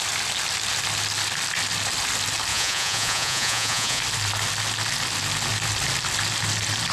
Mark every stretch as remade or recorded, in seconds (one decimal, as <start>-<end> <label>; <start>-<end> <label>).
0.0-2.5 recorded; 2.5-4.0 remade; 4.0-6.9 recorded